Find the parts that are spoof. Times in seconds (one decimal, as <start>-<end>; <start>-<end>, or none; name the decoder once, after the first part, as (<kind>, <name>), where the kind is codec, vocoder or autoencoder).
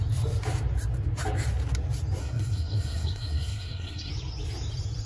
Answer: 2.2-4.1 (codec, SNAC)